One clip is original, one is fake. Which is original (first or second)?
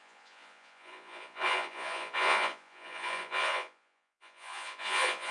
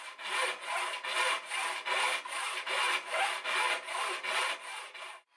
second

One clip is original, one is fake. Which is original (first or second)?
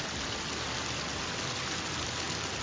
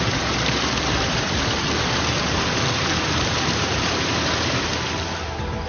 first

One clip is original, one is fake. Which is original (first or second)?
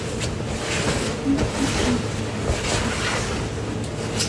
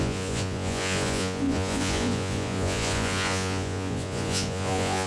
first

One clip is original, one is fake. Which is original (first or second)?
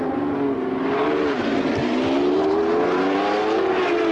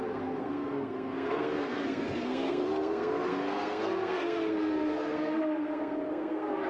first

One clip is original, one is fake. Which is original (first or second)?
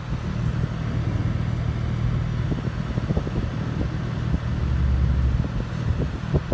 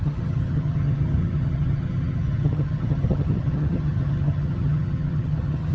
first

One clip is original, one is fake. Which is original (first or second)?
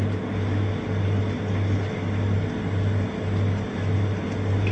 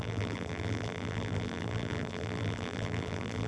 first